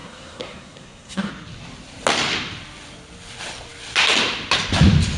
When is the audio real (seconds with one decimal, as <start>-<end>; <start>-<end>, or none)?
1.3-5.2